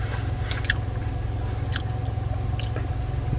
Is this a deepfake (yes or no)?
no